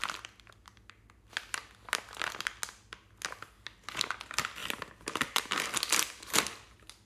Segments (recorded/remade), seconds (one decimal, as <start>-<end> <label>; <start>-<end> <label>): 0.0-4.6 recorded; 4.6-5.6 remade; 5.6-7.1 recorded